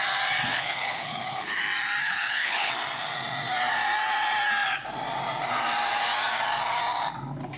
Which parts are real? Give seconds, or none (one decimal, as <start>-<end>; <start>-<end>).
0.0-0.5; 1.6-2.0; 2.7-7.6